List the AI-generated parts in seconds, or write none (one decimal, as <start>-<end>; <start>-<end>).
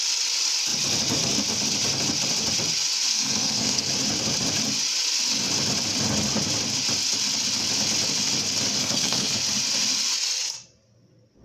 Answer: 3.1-3.9; 8.8-9.4